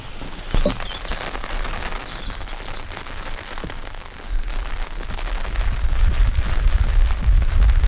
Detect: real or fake real